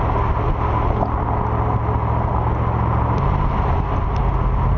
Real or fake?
real